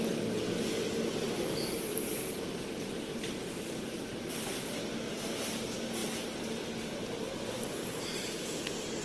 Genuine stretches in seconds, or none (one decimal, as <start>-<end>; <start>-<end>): 0.0-9.0